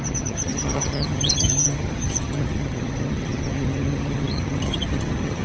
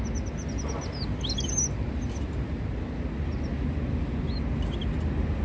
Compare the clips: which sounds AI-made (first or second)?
first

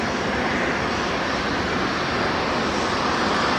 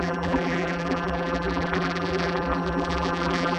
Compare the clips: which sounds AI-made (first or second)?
second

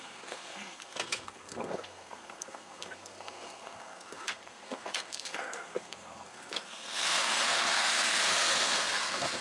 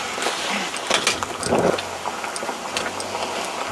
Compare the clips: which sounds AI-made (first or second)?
first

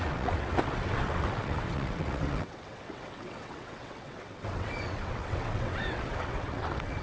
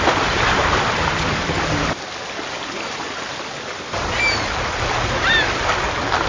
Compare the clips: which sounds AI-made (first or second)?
first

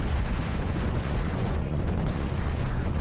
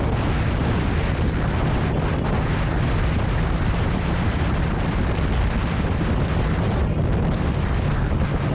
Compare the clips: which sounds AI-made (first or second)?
first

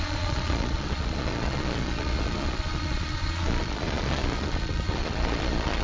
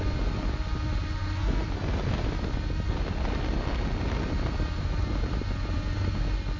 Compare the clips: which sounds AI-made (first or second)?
first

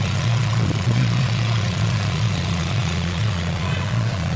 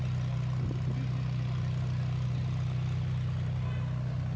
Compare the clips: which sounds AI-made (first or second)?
first